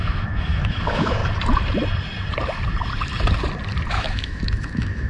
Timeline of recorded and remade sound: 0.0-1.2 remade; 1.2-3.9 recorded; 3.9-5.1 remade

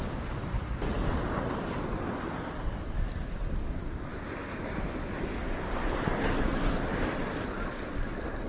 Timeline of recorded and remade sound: 0.0-8.5 recorded

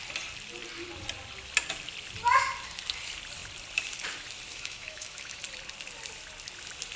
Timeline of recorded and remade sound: 0.0-4.5 recorded; 4.5-5.4 remade; 5.4-7.0 recorded

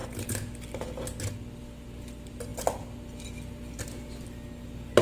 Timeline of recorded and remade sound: 0.0-5.0 recorded

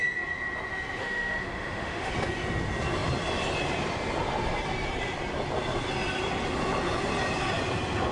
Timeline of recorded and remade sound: 0.0-1.0 recorded; 1.0-2.1 remade; 2.1-8.1 recorded

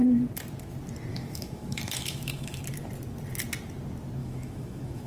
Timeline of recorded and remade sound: 0.0-1.1 recorded; 1.1-2.6 remade; 2.6-4.2 recorded; 4.2-5.1 remade